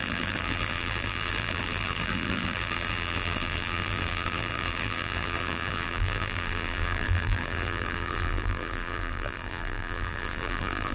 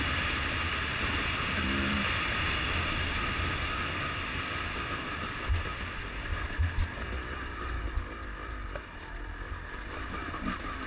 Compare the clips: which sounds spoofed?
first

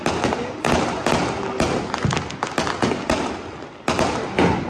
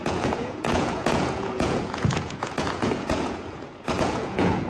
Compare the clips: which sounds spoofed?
second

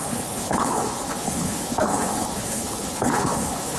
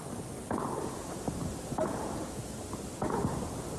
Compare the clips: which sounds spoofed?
first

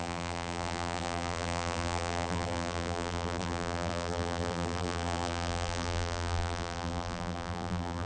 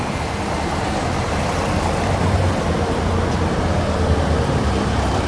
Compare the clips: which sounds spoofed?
first